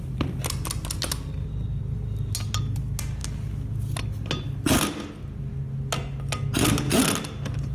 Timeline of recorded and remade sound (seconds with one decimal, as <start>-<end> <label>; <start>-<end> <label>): 0.0-7.7 recorded